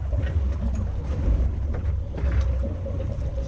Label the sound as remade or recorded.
recorded